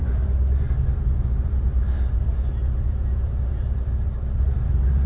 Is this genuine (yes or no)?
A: yes